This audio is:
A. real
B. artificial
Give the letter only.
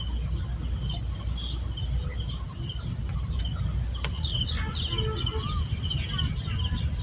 A